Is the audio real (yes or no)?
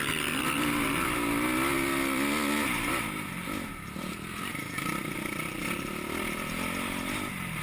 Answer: yes